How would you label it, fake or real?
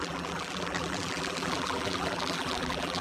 fake